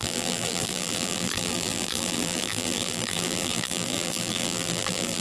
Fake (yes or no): yes